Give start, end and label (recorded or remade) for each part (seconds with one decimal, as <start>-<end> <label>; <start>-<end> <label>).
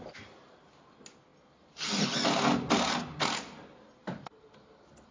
0.0-5.1 recorded